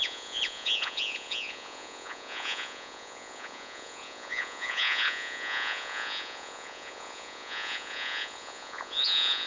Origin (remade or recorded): remade